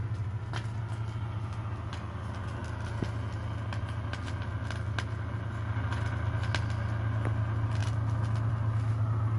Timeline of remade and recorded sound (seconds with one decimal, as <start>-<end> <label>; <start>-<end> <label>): 0.0-9.4 recorded